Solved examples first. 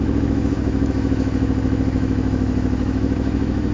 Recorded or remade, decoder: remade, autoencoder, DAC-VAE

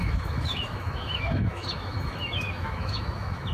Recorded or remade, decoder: remade, autoencoder, DAC-VAE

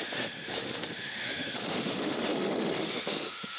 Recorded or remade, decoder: remade, autoencoder, DAC-VAE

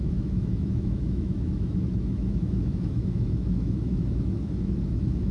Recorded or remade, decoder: remade, autoencoder, DAC-VAE